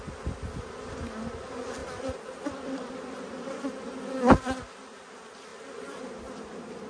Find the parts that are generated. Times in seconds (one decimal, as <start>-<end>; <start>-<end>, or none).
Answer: 1.8-2.9; 5.5-6.0